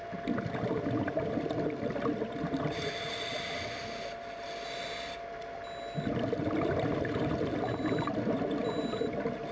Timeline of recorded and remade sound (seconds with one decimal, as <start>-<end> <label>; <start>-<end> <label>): 0.0-9.5 recorded